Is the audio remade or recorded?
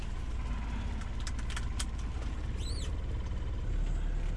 recorded